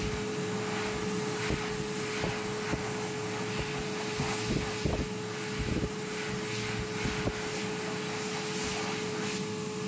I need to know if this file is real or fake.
real